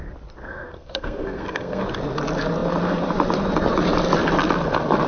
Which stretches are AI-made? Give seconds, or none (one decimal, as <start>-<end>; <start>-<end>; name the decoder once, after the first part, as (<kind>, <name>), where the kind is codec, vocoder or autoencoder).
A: 0.4-1.8 (codec, SNAC)